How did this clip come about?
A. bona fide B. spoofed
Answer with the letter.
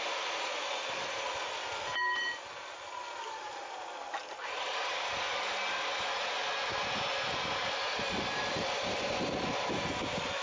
A